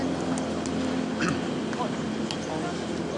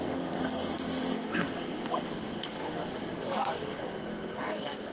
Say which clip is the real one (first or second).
first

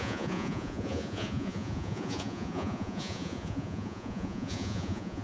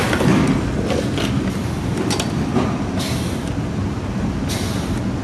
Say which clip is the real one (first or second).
second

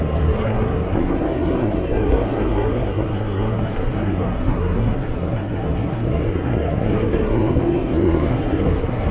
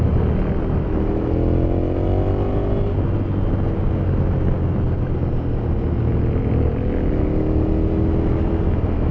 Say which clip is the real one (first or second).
second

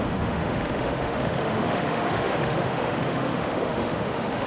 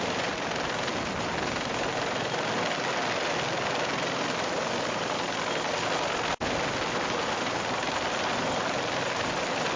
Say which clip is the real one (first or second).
second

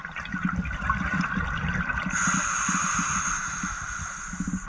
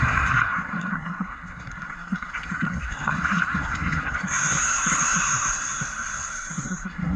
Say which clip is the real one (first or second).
first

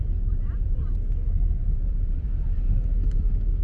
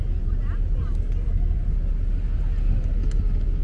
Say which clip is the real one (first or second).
second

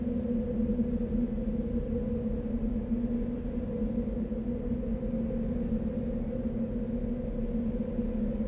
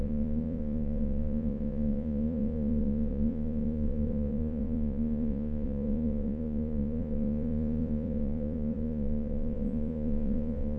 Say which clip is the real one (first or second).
first